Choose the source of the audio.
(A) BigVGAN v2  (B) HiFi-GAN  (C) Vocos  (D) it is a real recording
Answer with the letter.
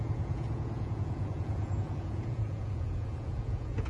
C